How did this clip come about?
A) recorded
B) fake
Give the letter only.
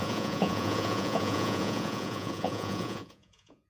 B